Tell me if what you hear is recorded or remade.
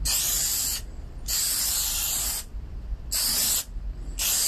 recorded